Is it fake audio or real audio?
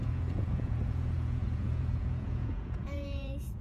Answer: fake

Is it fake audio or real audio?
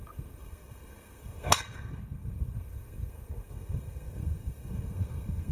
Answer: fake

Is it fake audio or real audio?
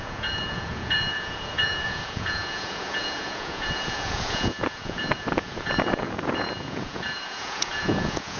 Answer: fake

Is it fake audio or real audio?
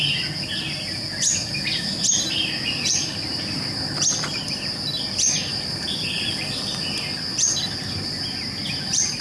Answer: real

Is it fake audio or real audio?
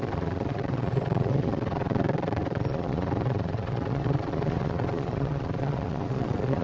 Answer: fake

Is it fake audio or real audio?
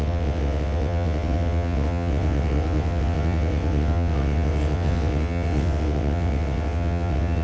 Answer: fake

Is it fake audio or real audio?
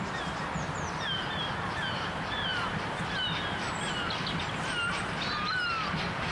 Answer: real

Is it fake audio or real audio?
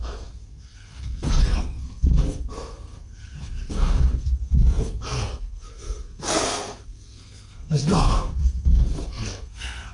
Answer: fake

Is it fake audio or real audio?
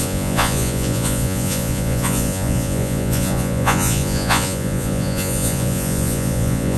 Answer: fake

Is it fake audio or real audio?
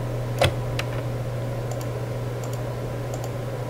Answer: real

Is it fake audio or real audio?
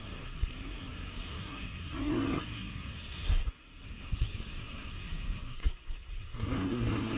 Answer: fake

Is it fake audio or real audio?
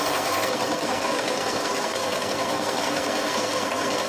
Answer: fake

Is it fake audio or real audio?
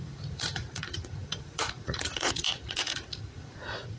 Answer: fake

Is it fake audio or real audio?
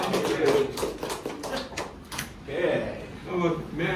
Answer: real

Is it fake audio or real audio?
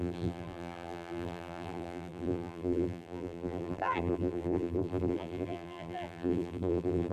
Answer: fake